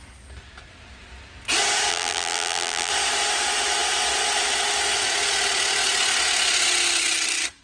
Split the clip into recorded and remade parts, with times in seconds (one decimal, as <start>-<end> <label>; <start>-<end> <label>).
0.0-1.9 recorded; 1.9-2.9 remade; 2.9-7.6 recorded

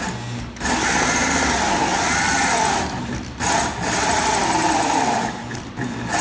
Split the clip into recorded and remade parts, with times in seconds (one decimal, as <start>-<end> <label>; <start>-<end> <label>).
0.0-1.9 recorded; 1.9-5.6 remade; 5.6-6.2 recorded

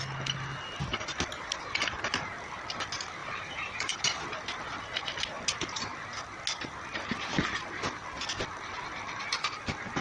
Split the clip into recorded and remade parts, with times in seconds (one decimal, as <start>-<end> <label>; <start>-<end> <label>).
0.0-3.2 recorded; 3.2-4.0 remade; 4.0-10.0 recorded

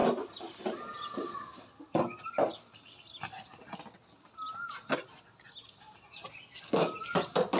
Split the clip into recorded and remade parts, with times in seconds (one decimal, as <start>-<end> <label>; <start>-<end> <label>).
0.0-0.8 remade; 0.8-7.6 recorded

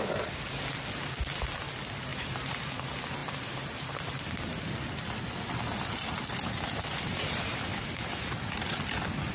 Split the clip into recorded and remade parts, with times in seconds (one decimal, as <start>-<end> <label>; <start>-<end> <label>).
0.0-2.1 recorded; 2.1-2.7 remade; 2.7-9.3 recorded

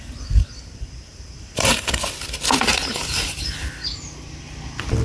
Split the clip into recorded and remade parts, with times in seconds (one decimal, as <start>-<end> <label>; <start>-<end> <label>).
0.0-1.1 recorded; 1.1-1.9 remade; 1.9-2.7 recorded; 2.7-3.4 remade; 3.4-5.0 recorded

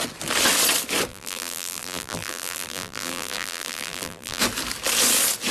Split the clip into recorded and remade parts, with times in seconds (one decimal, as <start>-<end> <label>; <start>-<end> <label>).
0.0-1.1 recorded; 1.1-4.4 remade; 4.4-5.5 recorded

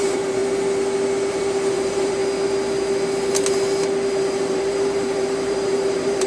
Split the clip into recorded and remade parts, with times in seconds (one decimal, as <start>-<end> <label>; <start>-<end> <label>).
0.0-0.4 remade; 0.4-1.3 recorded; 1.3-2.2 remade; 2.2-4.1 recorded; 4.1-6.3 remade